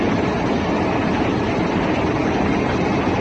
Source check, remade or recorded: recorded